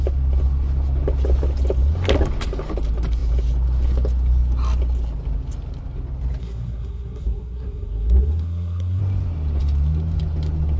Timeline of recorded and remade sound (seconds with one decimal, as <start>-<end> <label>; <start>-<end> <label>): 0.0-6.4 recorded; 6.4-9.0 remade; 9.0-10.8 recorded